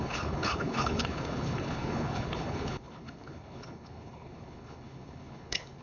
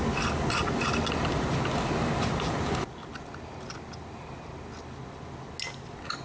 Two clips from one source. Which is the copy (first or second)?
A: first